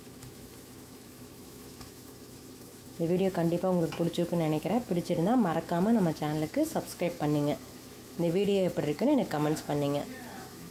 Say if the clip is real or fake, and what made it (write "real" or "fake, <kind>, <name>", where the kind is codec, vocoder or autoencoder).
fake, autoencoder, DAC-VAE